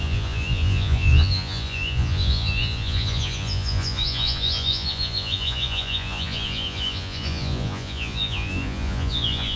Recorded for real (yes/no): no